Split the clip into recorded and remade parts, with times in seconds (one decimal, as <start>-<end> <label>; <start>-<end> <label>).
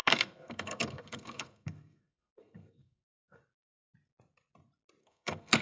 0.0-3.4 remade; 3.4-5.0 recorded; 5.0-5.6 remade